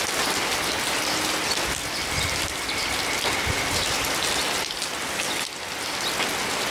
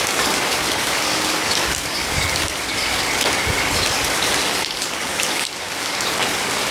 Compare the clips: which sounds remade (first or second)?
second